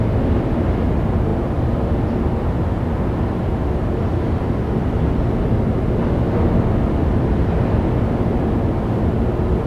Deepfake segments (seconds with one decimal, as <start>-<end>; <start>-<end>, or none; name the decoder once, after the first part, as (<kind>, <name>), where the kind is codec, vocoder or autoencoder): none